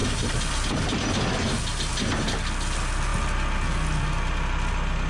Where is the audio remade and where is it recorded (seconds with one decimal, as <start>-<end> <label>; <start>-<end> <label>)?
0.0-1.9 remade; 1.9-5.1 recorded